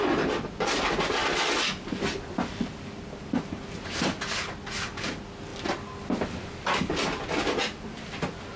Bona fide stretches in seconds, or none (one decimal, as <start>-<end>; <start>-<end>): 0.0-8.6